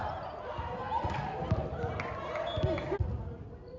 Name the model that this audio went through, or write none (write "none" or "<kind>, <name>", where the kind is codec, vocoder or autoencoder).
none